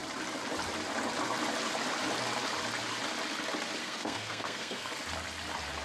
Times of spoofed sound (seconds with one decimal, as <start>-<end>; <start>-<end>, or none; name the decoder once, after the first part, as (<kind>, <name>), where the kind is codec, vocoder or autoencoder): 3.8-4.9 (codec, SNAC)